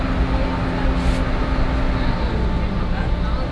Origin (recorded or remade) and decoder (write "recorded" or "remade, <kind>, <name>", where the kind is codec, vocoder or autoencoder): recorded